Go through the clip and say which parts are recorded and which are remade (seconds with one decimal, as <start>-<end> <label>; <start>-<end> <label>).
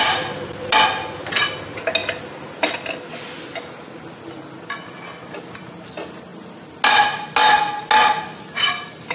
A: 0.0-9.1 recorded